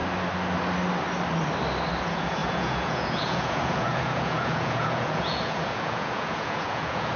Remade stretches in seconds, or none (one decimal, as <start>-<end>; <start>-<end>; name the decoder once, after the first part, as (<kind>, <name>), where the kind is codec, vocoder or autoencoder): 2.0-7.2 (vocoder, Vocos)